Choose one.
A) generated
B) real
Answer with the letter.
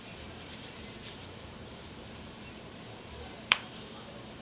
A